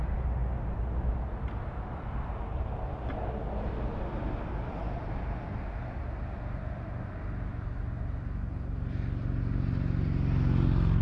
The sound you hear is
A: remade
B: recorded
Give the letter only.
B